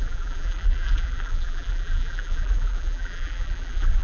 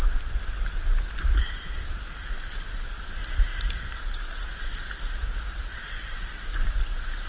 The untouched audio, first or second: second